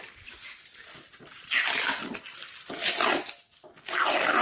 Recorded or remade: recorded